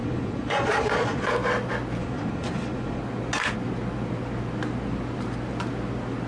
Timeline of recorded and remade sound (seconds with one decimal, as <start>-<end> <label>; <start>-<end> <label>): 0.0-1.3 remade; 1.3-2.0 recorded; 2.0-3.0 remade; 3.0-6.3 recorded